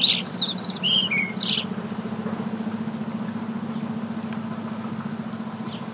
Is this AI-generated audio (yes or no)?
no